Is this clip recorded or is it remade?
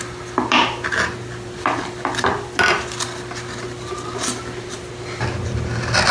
recorded